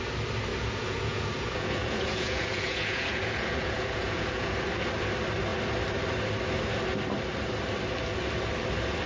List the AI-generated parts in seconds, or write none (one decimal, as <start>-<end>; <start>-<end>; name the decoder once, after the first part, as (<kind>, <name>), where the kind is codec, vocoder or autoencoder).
0.5-4.5 (vocoder, Vocos)